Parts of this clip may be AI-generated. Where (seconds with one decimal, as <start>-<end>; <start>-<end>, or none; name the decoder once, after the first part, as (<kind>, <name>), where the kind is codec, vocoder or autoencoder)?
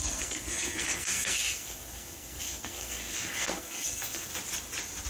0.0-4.3 (codec, SNAC)